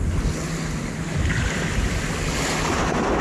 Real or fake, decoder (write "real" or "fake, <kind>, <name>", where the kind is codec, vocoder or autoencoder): real